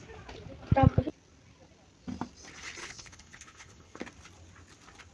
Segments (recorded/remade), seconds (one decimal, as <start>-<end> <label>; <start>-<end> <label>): 0.0-2.8 recorded; 2.8-4.0 remade; 4.0-5.1 recorded